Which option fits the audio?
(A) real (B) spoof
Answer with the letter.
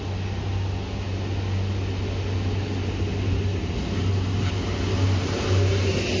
A